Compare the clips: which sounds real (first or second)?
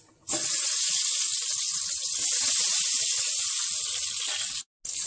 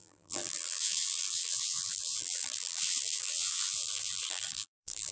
first